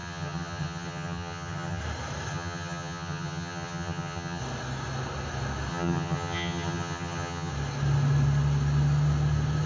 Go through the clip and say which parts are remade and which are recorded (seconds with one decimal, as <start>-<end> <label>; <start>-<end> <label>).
0.0-1.8 remade; 1.8-2.3 recorded; 2.3-4.4 remade; 4.4-5.7 recorded; 5.7-7.5 remade; 7.5-9.7 recorded